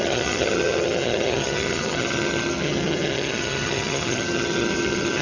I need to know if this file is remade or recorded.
remade